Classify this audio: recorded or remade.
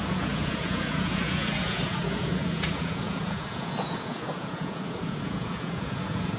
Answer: remade